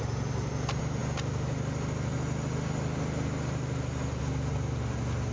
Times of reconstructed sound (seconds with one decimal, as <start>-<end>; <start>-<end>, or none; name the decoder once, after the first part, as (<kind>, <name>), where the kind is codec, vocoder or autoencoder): none